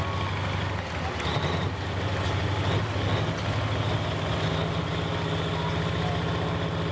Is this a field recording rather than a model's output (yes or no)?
yes